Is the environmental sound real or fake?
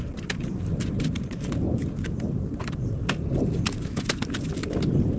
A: fake